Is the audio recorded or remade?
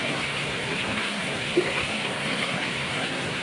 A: remade